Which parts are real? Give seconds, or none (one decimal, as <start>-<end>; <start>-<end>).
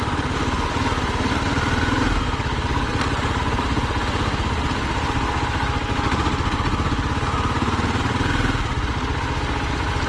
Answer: 0.0-10.1